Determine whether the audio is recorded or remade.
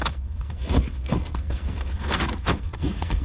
remade